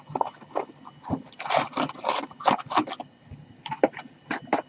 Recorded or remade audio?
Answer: recorded